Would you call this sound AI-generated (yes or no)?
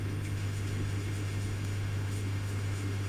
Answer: yes